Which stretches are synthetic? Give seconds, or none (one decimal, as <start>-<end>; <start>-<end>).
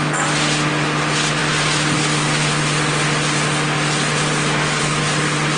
none